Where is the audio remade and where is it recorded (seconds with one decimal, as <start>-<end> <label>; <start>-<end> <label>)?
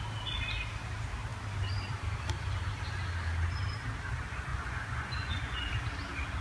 0.0-4.5 recorded; 4.5-5.7 remade; 5.7-6.4 recorded